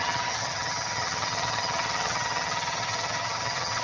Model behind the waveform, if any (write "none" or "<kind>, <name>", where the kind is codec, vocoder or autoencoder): vocoder, HiFi-GAN